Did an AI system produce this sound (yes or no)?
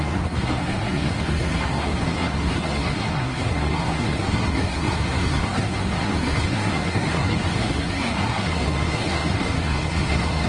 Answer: yes